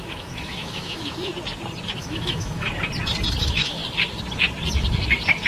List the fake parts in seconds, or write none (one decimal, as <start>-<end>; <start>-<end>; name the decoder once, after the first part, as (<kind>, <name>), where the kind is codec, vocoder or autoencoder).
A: 0.0-1.3 (autoencoder, DAC-VAE); 2.0-2.7; 3.4-3.8